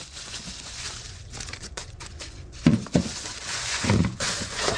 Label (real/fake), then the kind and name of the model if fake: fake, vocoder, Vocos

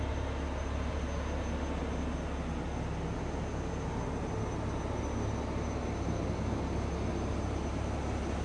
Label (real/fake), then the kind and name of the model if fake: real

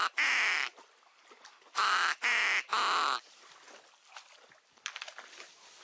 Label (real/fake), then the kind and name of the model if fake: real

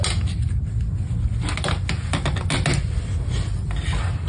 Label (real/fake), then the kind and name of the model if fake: real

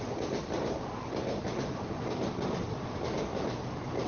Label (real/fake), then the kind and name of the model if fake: real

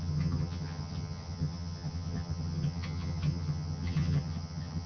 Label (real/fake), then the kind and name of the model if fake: fake, vocoder, HiFi-GAN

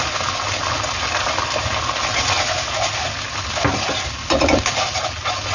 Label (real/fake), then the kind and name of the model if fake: real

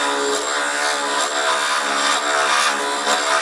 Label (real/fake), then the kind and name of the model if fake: real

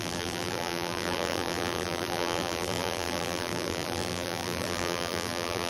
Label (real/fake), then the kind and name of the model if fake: fake, vocoder, BigVGAN v2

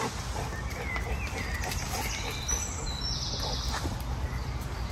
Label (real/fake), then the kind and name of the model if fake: real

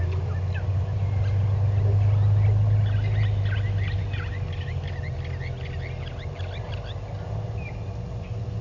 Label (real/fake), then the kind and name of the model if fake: real